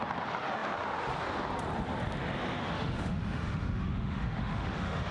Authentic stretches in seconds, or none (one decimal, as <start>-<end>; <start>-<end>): 0.0-2.6